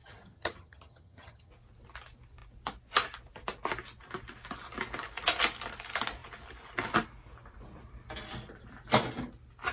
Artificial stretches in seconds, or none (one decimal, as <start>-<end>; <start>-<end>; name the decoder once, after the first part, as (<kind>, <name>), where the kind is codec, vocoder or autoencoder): 0.0-1.5 (vocoder, HiFi-GAN)

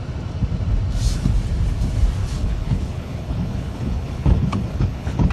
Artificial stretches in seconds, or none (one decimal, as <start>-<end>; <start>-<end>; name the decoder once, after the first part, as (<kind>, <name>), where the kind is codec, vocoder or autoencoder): 2.2-5.3 (codec, HILCodec)

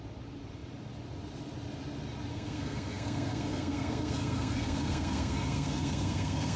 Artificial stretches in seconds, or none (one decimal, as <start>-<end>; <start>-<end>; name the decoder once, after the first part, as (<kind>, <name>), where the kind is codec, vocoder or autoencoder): 2.3-6.6 (codec, SNAC)

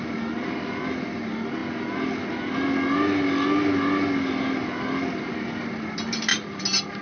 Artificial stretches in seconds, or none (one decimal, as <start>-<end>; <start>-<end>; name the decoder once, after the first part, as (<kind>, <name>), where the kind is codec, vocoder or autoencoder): none